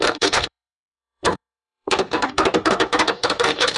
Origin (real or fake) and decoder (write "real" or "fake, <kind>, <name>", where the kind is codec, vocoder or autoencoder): fake, codec, DAC